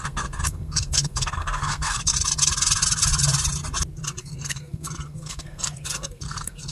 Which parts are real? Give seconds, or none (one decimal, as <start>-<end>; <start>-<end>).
2.1-4.2